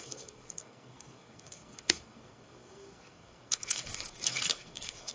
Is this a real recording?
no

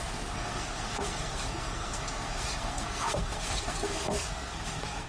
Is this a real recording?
no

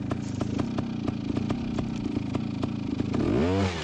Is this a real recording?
yes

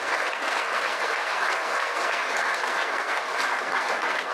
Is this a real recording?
no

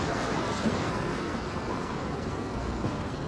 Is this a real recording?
no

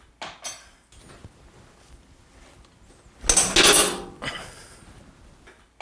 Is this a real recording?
yes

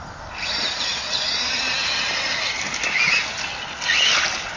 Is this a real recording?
yes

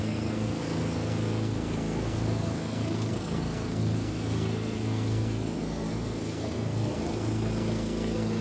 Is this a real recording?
no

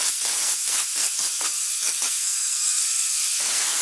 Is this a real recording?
no